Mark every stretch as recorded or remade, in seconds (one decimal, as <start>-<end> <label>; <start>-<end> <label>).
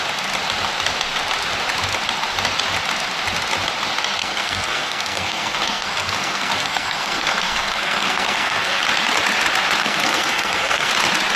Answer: 0.0-4.2 recorded; 4.2-8.8 remade; 8.8-9.8 recorded; 9.8-10.9 remade; 10.9-11.4 recorded